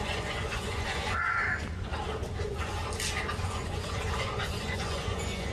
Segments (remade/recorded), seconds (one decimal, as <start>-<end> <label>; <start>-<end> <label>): 0.0-1.9 remade; 1.9-2.4 recorded; 2.4-2.8 remade; 2.8-3.4 recorded; 3.4-5.5 remade